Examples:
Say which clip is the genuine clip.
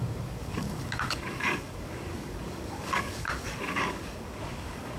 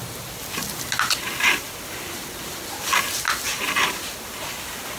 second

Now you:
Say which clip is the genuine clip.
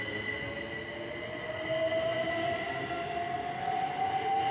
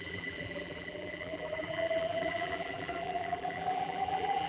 first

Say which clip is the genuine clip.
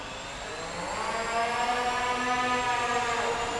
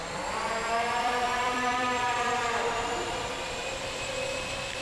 first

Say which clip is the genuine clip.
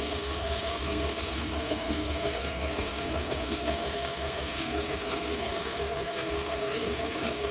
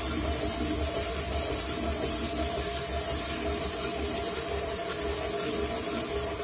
second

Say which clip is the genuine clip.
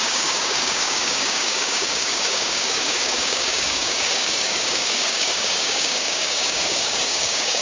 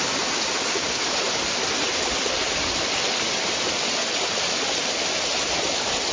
second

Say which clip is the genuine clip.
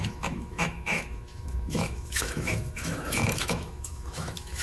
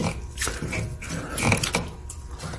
second